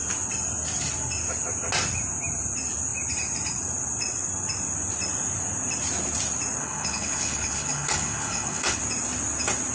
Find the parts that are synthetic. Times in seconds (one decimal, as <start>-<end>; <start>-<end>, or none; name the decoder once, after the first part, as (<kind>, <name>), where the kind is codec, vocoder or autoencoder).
6.6-8.8 (codec, HILCodec)